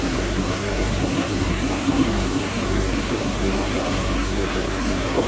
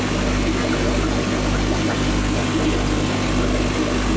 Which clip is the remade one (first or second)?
first